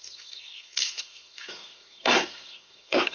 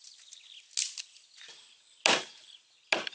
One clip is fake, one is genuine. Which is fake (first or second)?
first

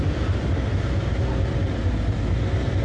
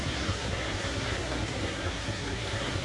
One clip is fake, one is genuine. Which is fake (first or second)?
second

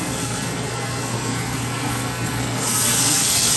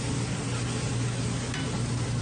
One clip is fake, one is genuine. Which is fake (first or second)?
first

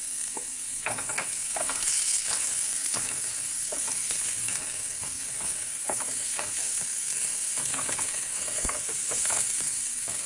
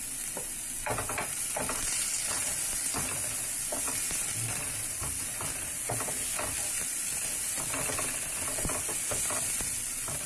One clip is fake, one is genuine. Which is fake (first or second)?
first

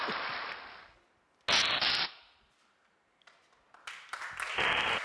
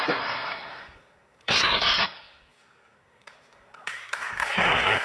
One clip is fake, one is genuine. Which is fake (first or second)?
second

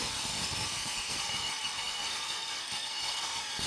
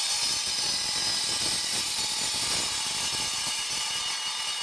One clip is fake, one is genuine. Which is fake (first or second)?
first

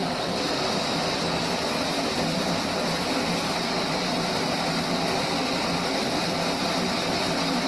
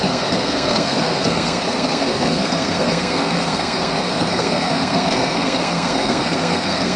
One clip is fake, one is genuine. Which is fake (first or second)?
second